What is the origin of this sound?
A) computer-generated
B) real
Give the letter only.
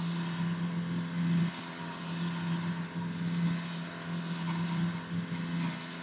B